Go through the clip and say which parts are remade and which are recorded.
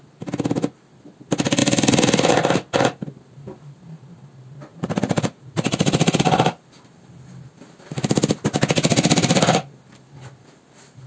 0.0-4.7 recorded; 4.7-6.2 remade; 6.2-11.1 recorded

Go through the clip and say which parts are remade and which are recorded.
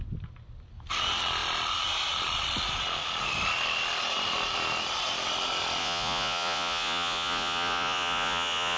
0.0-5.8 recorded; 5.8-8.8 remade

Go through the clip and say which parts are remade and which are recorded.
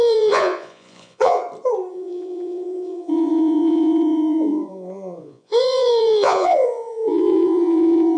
0.0-1.4 remade; 1.4-1.9 recorded; 1.9-8.2 remade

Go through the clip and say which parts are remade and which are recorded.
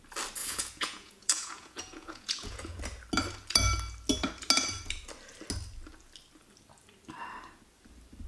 0.0-0.4 recorded; 0.4-2.8 remade; 2.8-8.3 recorded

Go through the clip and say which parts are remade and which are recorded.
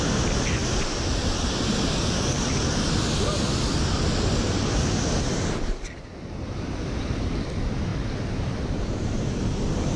0.0-10.0 recorded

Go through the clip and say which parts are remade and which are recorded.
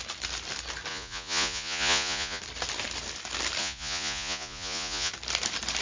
0.0-0.9 recorded; 0.9-2.4 remade; 2.4-3.6 recorded; 3.6-5.1 remade; 5.1-5.8 recorded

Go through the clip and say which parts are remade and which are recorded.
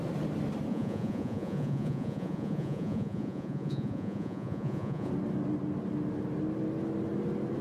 0.0-0.7 recorded; 0.7-5.1 remade; 5.1-7.6 recorded